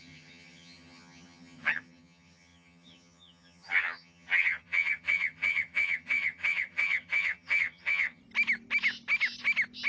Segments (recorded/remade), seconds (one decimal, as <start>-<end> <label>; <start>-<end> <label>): 0.0-8.2 remade; 8.2-9.9 recorded